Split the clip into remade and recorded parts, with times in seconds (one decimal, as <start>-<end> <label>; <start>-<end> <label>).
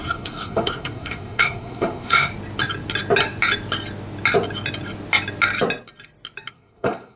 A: 0.0-2.3 remade; 2.3-6.5 recorded; 6.5-7.2 remade